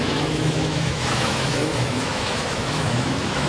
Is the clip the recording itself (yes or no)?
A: no